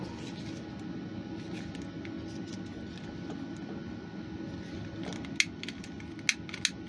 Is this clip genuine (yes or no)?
yes